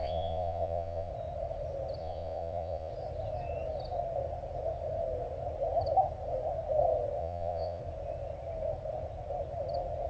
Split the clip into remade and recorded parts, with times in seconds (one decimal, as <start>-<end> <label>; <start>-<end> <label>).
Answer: 0.0-1.1 remade; 1.1-2.0 recorded; 2.0-2.9 remade; 2.9-7.2 recorded; 7.2-7.8 remade; 7.8-10.1 recorded